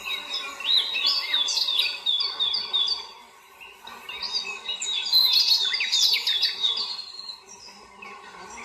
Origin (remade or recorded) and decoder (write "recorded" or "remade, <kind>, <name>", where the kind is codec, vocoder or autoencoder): recorded